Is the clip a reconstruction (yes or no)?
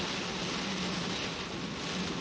no